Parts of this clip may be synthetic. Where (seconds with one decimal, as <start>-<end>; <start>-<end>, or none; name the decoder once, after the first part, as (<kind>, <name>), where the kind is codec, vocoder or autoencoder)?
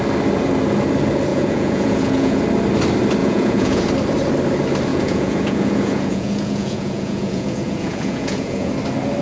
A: 1.3-2.4 (vocoder, Vocos); 3.2-3.8; 4.9-8.7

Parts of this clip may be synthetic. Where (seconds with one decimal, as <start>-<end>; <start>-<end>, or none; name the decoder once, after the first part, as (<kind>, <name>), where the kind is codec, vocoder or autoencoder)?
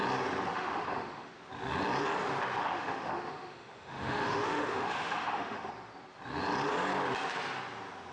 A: 0.5-1.3 (autoencoder, DAC-VAE); 2.6-5.7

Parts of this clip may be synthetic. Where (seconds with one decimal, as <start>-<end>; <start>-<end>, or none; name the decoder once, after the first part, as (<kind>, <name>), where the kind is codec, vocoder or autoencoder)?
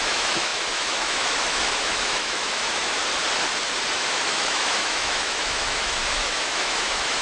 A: 0.0-3.0 (autoencoder, DAC-VAE); 3.9-7.2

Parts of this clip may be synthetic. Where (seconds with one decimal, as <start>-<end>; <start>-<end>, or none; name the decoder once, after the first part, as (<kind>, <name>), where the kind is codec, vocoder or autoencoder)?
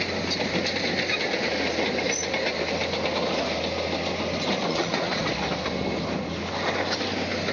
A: 4.7-5.3 (vocoder, Vocos)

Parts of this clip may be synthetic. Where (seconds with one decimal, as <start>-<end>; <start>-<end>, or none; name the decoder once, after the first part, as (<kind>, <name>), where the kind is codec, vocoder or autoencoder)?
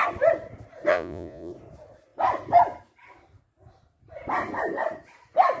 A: 0.9-1.5 (vocoder, Vocos)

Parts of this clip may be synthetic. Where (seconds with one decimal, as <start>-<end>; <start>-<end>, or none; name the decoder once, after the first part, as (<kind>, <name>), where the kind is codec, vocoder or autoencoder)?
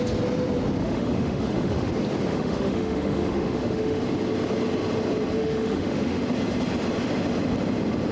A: 0.8-1.9 (autoencoder, DAC-VAE); 2.3-4.0; 5.4-6.2